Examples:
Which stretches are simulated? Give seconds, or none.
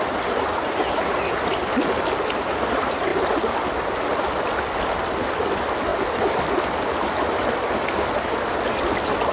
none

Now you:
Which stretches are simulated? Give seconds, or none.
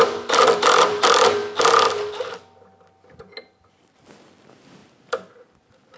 none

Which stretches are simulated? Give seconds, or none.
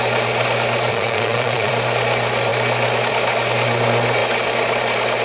0.9-1.7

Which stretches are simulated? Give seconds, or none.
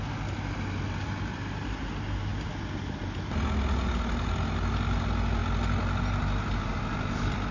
none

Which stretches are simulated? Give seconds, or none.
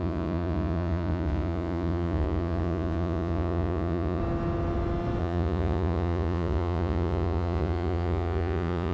0.0-4.2; 5.2-8.9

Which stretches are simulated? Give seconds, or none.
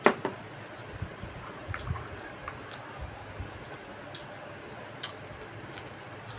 1.1-2.3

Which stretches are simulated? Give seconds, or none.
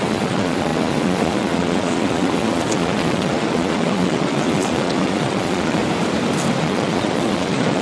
0.0-5.8; 6.6-7.8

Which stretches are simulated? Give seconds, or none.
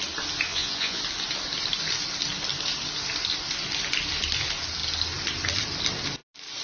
0.5-1.0